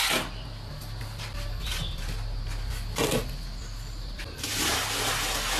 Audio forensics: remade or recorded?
recorded